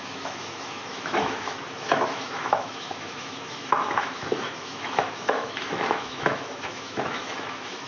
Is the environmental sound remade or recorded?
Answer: remade